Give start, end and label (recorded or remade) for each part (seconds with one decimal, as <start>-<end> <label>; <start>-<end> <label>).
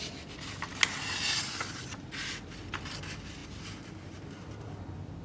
0.0-5.2 recorded